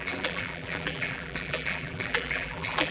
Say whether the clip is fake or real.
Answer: fake